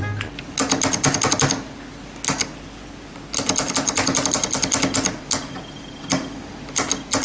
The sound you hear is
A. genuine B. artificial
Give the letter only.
A